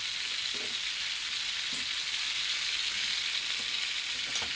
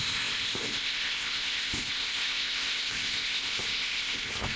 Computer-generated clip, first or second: second